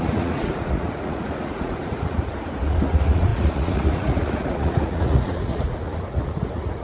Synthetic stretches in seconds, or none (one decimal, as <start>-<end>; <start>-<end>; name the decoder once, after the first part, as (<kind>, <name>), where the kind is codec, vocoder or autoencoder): 0.0-6.8 (vocoder, Vocos)